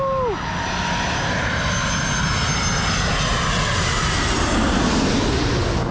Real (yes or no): yes